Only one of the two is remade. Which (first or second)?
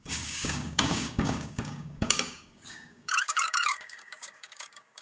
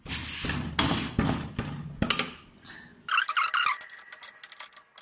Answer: first